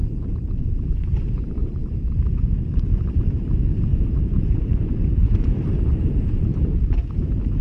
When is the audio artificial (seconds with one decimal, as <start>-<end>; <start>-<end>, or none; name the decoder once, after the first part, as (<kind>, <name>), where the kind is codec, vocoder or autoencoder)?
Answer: 0.0-6.5 (vocoder, BigVGAN v2)

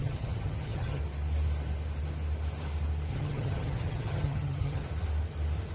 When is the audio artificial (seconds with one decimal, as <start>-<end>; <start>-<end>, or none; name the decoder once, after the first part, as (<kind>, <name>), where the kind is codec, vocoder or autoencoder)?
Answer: 0.0-1.0 (vocoder, HiFi-GAN); 3.1-4.8

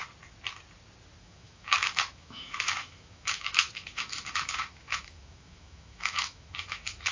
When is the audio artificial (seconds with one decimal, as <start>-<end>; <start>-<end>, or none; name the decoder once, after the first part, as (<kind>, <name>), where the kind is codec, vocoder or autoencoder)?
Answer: 1.2-7.1 (autoencoder, DAC-VAE)

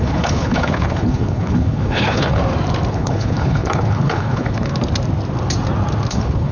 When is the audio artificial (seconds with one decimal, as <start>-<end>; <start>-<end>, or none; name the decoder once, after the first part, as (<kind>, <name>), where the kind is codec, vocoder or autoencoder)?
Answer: 0.0-2.4 (codec, HILCodec); 2.9-4.7; 6.1-6.5

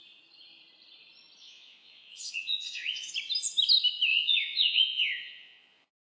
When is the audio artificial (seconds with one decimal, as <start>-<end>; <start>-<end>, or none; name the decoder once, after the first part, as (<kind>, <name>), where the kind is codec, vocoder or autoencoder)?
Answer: 1.4-3.1 (vocoder, Vocos); 4.1-6.1

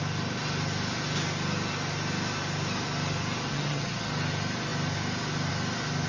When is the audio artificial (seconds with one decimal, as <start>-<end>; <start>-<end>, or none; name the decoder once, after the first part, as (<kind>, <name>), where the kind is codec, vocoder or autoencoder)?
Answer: 3.5-4.1 (vocoder, HiFi-GAN)